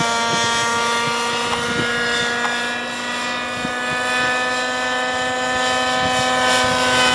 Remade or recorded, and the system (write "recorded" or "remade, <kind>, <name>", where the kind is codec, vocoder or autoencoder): recorded